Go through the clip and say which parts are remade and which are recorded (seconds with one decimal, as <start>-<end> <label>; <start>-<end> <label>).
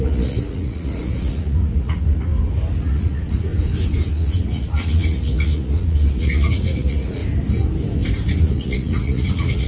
0.0-2.3 remade; 2.3-2.8 recorded; 2.8-3.5 remade; 3.5-4.1 recorded; 4.1-7.2 remade; 7.2-8.4 recorded; 8.4-9.7 remade